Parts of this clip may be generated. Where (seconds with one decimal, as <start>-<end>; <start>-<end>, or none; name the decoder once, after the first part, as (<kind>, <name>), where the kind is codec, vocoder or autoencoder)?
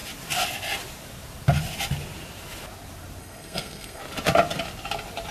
3.2-4.0 (codec, SNAC)